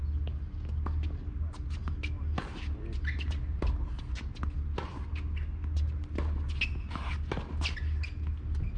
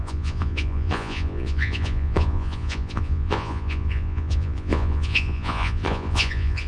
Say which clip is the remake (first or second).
second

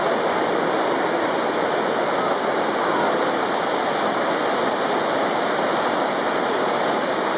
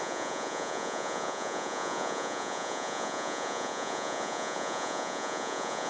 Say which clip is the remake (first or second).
second